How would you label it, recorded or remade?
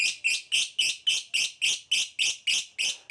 recorded